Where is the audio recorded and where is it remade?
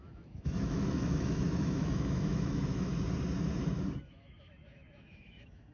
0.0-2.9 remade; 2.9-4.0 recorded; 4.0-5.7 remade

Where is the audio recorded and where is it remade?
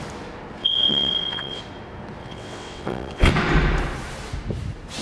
0.0-0.6 recorded; 0.6-1.6 remade; 1.6-2.2 recorded; 2.2-3.3 remade; 3.3-5.0 recorded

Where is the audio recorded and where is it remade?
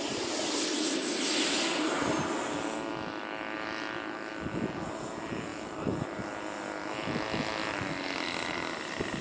0.0-5.5 recorded; 5.5-6.2 remade; 6.2-9.2 recorded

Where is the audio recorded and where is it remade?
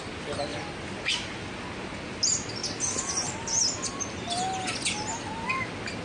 0.0-6.0 recorded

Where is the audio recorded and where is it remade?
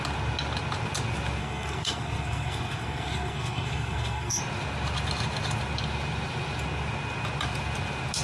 0.0-1.4 recorded; 1.4-4.4 remade; 4.4-8.2 recorded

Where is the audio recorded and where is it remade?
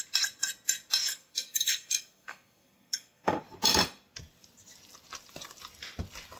0.0-1.0 recorded; 1.0-3.4 remade; 3.4-6.4 recorded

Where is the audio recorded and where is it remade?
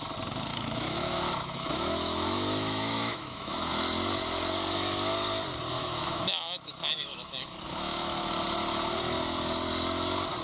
0.0-0.5 recorded; 0.5-3.7 remade; 3.7-5.8 recorded; 5.8-8.3 remade; 8.3-10.4 recorded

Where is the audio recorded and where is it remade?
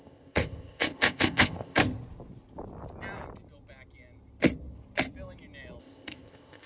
0.0-1.8 remade; 1.8-5.8 recorded; 5.8-6.7 remade